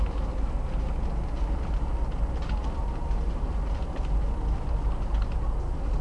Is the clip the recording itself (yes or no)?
yes